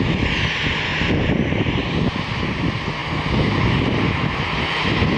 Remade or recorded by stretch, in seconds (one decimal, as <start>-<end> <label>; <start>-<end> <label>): 0.0-0.9 recorded; 0.9-1.7 remade; 1.7-5.2 recorded